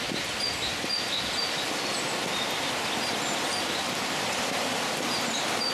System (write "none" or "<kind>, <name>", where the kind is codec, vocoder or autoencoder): none